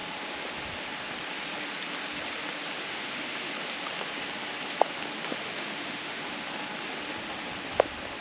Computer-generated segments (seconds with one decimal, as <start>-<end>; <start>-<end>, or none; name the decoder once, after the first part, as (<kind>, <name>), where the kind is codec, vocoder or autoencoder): 2.8-3.5 (autoencoder, DAC-VAE); 5.3-6.2